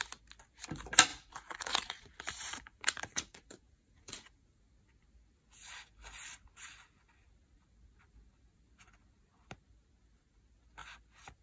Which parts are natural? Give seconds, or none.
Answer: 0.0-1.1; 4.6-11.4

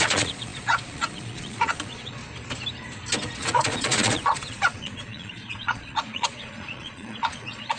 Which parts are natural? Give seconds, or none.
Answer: 2.2-3.4

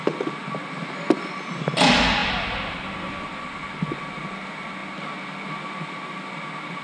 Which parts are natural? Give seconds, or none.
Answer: 0.0-6.8

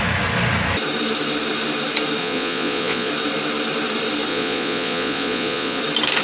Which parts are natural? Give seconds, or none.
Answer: 0.0-2.2; 3.1-4.3; 5.8-6.2

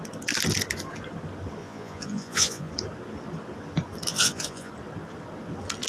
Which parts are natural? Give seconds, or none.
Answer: 0.0-1.6; 2.7-4.1; 4.7-5.9

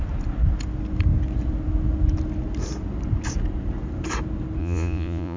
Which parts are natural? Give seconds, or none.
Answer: 0.0-4.6